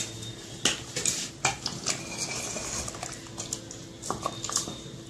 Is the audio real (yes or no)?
yes